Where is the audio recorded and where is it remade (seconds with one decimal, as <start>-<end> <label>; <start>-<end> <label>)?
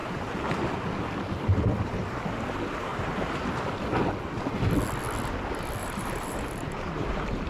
0.0-0.8 remade; 0.8-2.9 recorded; 2.9-3.6 remade; 3.6-5.8 recorded; 5.8-7.1 remade; 7.1-7.5 recorded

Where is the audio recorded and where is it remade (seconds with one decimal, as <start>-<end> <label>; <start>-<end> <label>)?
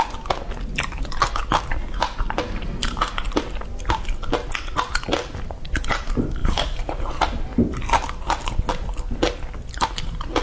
0.0-6.4 recorded; 6.4-7.1 remade; 7.1-10.4 recorded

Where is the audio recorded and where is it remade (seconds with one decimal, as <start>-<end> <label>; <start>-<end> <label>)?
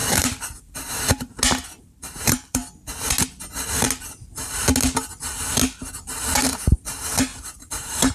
0.0-1.3 remade; 1.3-1.8 recorded; 1.8-2.6 remade; 2.6-6.4 recorded; 6.4-8.1 remade